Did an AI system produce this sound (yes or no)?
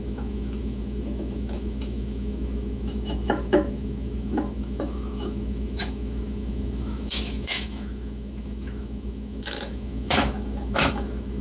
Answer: yes